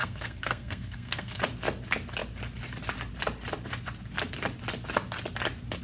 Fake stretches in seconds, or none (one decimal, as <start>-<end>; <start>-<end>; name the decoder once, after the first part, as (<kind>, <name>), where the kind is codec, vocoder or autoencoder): 0.0-1.4 (codec, SNAC)